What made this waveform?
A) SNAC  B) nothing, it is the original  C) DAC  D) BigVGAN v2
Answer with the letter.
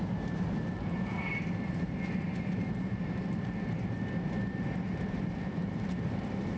D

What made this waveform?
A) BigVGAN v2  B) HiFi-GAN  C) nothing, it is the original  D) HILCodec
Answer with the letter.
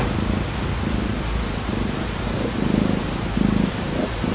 C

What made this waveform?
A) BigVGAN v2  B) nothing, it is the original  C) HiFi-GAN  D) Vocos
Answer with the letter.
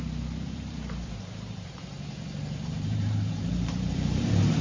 A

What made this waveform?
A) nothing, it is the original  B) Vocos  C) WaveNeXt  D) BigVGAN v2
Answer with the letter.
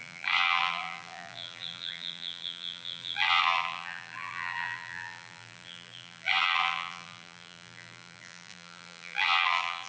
D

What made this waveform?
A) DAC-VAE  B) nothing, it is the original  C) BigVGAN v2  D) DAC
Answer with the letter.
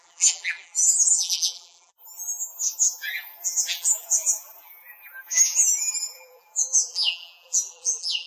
C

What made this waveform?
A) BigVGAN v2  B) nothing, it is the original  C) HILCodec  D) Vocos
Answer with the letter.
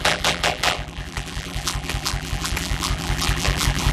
A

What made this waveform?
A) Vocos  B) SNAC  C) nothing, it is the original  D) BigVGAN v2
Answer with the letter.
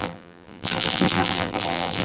D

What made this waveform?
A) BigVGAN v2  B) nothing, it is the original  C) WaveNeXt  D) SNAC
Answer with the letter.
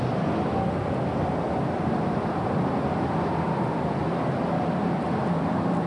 A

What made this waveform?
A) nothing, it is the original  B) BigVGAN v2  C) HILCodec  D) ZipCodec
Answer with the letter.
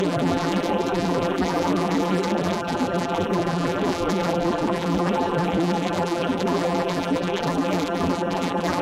B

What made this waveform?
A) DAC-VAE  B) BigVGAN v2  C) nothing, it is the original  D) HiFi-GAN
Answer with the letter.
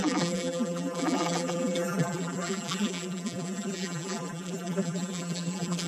B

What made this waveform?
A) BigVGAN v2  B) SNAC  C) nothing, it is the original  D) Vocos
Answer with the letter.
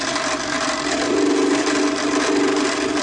A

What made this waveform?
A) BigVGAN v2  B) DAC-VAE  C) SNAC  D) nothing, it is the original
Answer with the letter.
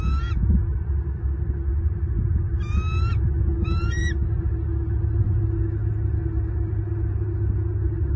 D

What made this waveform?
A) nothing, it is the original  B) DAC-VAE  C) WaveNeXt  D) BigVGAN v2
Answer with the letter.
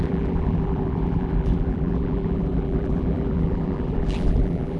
D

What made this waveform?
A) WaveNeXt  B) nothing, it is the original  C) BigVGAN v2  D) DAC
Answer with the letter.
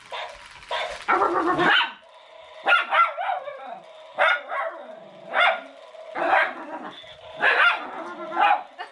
B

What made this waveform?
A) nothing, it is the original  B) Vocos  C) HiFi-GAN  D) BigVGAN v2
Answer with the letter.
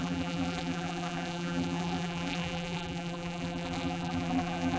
D